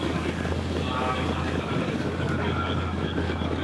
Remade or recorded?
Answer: remade